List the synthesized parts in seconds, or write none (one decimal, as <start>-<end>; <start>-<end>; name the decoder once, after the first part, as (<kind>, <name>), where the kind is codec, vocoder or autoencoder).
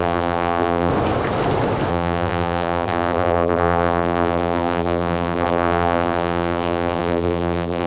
0.0-0.9 (vocoder, BigVGAN v2); 1.9-7.9